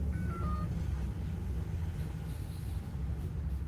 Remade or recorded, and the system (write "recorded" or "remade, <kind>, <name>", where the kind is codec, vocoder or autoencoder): recorded